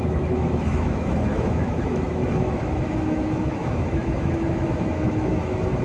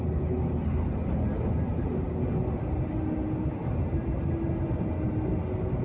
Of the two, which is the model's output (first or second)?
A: first